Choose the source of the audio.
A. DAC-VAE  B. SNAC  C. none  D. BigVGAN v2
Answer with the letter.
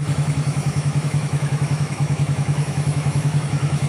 A